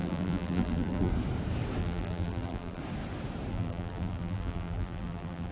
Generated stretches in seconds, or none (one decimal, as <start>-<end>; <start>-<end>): 0.0-1.1; 1.8-2.8; 3.5-5.5